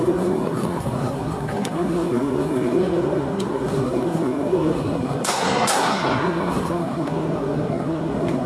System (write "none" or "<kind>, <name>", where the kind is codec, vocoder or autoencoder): codec, SNAC